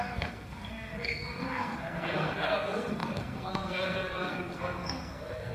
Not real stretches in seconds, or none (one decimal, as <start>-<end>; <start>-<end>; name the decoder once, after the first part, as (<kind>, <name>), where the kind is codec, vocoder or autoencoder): 0.0-5.5 (codec, SNAC)